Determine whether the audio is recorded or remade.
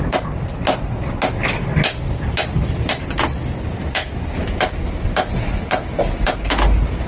recorded